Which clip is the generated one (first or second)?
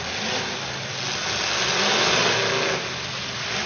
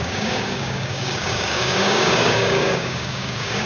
second